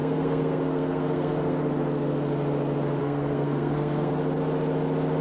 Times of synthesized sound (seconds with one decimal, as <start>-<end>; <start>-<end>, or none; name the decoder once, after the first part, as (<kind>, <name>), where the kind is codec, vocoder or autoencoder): 0.0-1.6 (codec, SNAC); 3.0-4.1